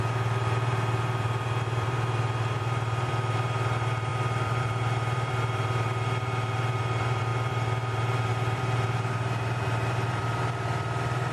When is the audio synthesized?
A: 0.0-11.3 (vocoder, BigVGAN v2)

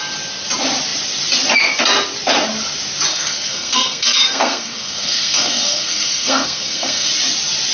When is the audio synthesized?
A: 3.1-7.1 (codec, SNAC)

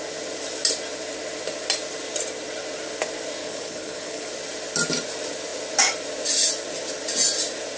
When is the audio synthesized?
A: 3.4-4.3 (codec, HILCodec)

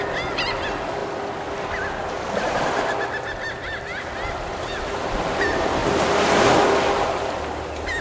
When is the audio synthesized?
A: none

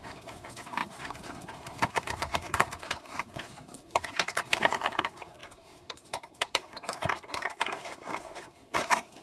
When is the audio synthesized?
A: 0.0-9.2 (codec, SNAC)